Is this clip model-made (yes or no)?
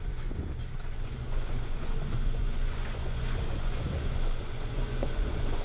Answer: yes